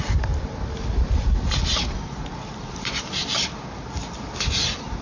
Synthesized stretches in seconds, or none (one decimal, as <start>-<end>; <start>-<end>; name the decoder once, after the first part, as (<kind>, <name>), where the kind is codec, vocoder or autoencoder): none